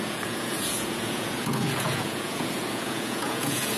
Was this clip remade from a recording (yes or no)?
yes